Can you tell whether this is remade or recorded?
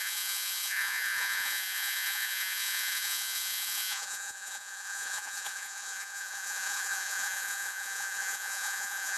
remade